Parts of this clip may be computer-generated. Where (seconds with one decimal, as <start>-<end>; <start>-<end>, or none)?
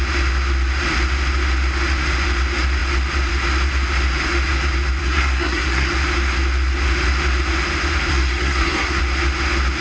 5.0-5.9; 8.1-9.0